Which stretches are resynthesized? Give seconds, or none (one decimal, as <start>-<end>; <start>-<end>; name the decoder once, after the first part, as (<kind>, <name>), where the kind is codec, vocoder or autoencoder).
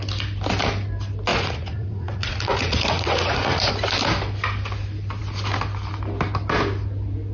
1.3-3.7 (vocoder, Vocos)